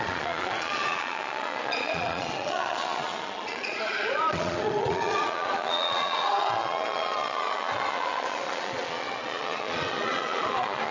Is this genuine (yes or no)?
no